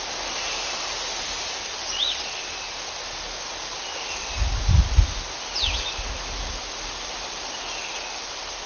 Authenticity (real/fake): real